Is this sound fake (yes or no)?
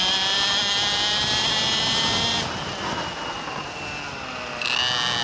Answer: no